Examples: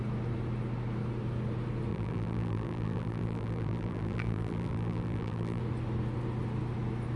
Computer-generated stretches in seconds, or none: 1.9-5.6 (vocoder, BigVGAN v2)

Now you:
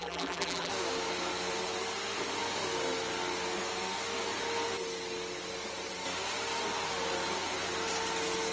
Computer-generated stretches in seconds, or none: 0.0-0.7 (vocoder, BigVGAN v2)

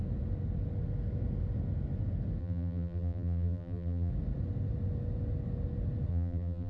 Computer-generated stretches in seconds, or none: 2.4-4.1 (vocoder, BigVGAN v2); 6.1-6.7

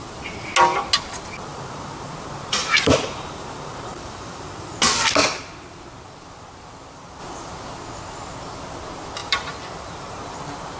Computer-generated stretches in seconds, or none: 1.5-4.8 (vocoder, BigVGAN v2); 9.2-10.4